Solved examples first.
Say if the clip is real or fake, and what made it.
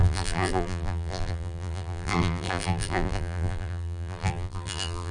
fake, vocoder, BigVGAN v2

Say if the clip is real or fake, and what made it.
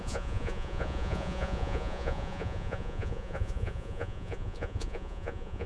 fake, vocoder, Vocos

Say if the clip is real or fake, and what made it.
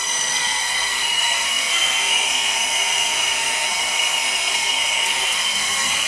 fake, codec, SNAC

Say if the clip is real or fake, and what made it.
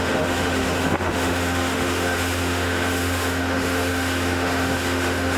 fake, autoencoder, DAC-VAE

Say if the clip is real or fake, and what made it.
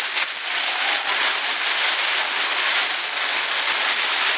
real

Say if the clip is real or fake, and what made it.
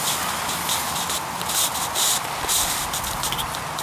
real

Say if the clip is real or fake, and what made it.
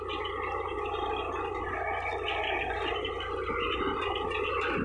real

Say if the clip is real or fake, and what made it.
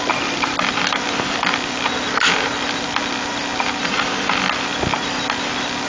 real